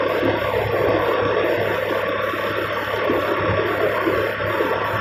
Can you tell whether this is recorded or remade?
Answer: recorded